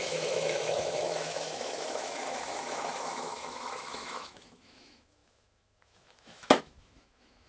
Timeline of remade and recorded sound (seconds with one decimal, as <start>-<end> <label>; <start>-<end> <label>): 0.0-7.5 remade